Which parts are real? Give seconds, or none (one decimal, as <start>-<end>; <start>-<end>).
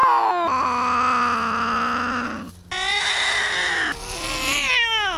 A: 0.0-5.2